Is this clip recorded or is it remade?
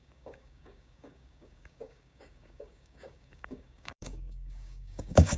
remade